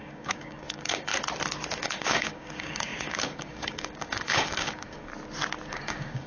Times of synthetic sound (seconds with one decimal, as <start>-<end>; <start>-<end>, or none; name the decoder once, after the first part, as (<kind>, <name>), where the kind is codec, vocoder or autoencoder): 0.0-1.1 (codec, DAC); 1.8-5.1; 5.7-6.3

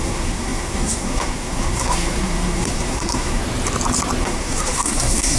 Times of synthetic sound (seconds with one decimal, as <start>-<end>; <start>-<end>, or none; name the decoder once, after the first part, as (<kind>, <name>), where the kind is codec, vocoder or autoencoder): 0.0-3.4 (codec, SNAC); 4.2-5.4

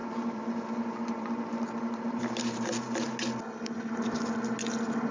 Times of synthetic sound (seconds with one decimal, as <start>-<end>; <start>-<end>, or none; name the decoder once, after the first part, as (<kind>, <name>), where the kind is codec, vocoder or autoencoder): 0.0-3.1 (vocoder, BigVGAN v2)

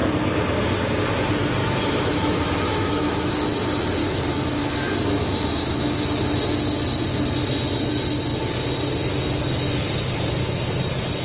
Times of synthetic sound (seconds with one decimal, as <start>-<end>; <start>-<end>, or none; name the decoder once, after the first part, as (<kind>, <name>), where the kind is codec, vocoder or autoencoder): 1.6-3.4 (autoencoder, DAC-VAE); 4.0-6.5

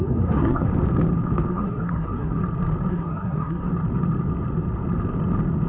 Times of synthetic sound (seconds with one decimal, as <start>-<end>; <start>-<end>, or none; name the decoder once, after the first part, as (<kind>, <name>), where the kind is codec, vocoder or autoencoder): 0.0-0.7 (codec, SNAC); 1.5-2.4; 2.9-3.7

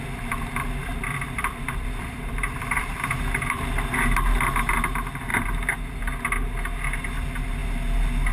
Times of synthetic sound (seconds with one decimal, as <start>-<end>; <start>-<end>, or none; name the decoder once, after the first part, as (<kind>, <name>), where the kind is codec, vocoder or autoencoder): 0.8-3.6 (vocoder, BigVGAN v2); 5.3-6.0

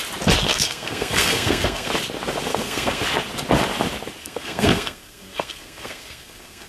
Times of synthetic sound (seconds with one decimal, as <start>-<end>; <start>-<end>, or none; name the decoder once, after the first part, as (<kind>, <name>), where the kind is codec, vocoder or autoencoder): 0.5-1.9 (codec, SNAC); 2.5-3.0; 4.2-6.7

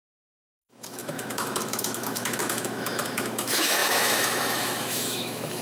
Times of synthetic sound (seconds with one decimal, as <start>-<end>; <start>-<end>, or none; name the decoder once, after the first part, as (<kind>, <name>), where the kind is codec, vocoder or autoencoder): 0.0-5.6 (autoencoder, DAC-VAE)